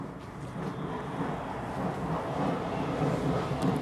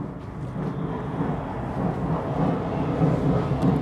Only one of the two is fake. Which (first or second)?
first